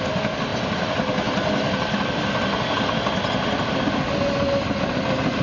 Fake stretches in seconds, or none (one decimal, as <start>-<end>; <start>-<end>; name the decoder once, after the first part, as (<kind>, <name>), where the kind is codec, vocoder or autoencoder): none

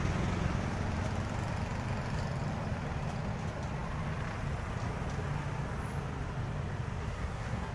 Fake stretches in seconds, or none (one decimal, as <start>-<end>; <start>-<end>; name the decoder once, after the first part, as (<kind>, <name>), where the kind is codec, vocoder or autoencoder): 7.0-7.7 (codec, SNAC)

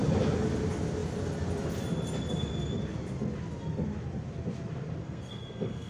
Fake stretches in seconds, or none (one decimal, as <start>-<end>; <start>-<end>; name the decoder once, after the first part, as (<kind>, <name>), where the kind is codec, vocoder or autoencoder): 5.0-5.9 (codec, SNAC)

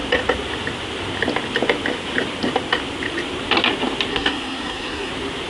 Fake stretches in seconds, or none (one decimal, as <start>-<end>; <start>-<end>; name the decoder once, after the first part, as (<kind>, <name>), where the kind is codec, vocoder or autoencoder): 4.1-5.1 (codec, SNAC)

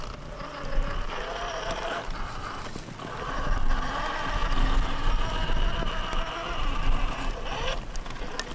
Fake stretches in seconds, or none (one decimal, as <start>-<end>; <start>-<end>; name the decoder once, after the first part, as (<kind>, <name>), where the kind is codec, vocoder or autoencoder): none